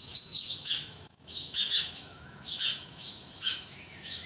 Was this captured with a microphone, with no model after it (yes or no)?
no